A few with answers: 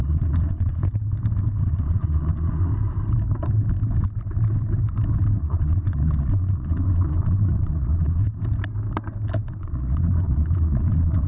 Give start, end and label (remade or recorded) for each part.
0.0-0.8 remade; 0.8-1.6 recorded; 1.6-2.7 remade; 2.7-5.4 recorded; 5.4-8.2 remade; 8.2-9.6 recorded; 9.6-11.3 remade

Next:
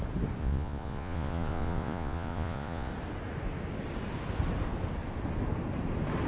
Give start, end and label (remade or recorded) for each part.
0.0-0.4 recorded; 0.4-2.9 remade; 2.9-6.3 recorded